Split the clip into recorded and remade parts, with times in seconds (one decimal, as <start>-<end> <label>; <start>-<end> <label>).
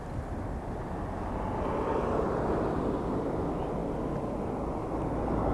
0.0-5.5 recorded